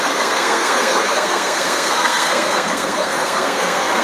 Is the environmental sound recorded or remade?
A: remade